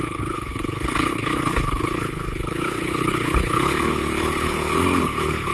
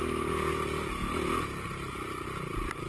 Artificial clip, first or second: first